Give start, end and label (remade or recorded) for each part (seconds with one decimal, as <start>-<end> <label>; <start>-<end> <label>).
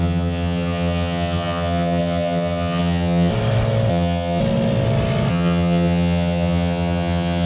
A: 0.0-3.3 remade; 3.3-3.9 recorded; 3.9-4.4 remade; 4.4-5.3 recorded; 5.3-7.5 remade